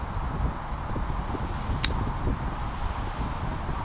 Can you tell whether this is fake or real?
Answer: real